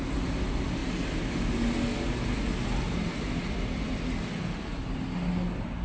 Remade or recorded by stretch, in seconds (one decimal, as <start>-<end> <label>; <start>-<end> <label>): 0.0-5.8 recorded